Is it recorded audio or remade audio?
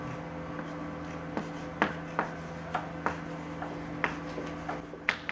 recorded